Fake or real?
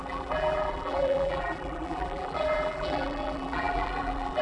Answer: fake